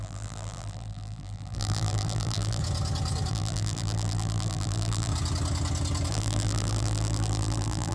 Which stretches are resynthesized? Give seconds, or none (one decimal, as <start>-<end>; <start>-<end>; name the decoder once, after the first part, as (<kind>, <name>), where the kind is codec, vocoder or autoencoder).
0.0-2.6 (vocoder, BigVGAN v2); 3.3-5.1; 6.1-7.9